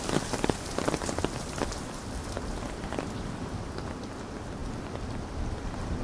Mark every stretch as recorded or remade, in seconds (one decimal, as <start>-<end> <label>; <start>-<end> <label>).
0.0-6.0 recorded